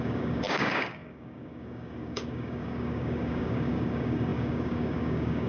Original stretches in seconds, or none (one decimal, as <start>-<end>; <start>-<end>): none